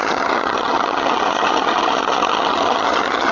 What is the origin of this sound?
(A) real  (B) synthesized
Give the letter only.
B